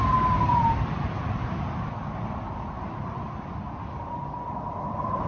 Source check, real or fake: real